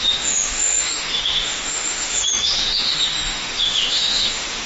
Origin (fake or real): fake